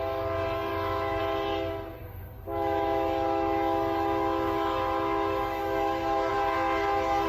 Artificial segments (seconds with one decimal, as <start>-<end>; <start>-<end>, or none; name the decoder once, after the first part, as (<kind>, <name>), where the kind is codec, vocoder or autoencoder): 0.7-1.2 (autoencoder, DAC-VAE); 2.0-6.3